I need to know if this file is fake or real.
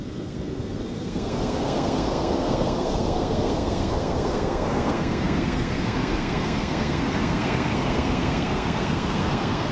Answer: fake